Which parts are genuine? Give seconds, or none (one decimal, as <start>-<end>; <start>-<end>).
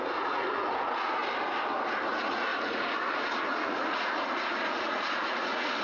1.2-2.1